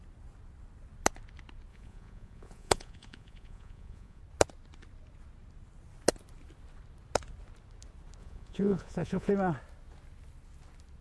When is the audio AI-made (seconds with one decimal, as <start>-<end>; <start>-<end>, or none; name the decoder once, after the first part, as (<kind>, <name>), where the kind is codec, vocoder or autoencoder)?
1.7-4.2 (vocoder, Vocos); 8.2-9.3

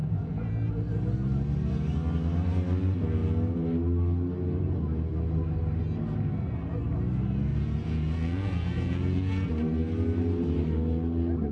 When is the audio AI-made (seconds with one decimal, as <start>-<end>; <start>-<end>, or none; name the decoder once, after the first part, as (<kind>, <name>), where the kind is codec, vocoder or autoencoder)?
0.0-0.5 (vocoder, Vocos); 7.5-9.5

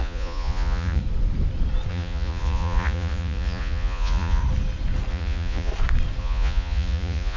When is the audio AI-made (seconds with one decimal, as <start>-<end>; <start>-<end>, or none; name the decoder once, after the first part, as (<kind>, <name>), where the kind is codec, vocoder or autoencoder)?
0.0-1.0 (vocoder, Vocos); 1.9-4.4; 5.1-5.7; 6.2-7.4

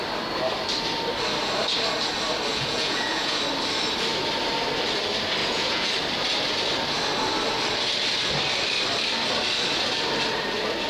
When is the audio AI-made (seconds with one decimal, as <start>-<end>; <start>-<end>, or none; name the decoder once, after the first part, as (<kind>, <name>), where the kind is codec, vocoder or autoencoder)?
2.5-3.4 (vocoder, Vocos); 5.4-5.9

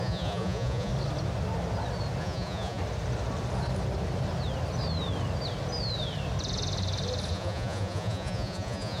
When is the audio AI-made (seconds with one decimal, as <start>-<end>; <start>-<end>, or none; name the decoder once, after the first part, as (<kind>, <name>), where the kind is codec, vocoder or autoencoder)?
0.0-0.9 (vocoder, Vocos); 2.2-2.8; 7.3-9.0

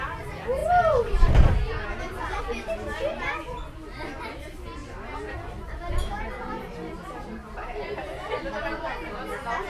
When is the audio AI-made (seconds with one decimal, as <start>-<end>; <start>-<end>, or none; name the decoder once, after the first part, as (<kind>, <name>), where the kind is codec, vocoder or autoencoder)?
none